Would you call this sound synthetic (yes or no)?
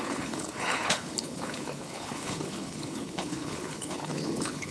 yes